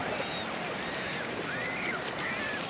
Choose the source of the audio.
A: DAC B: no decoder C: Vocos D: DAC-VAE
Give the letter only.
B